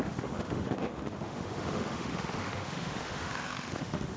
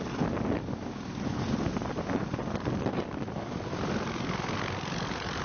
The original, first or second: second